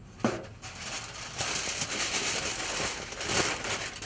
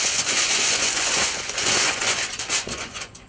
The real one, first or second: first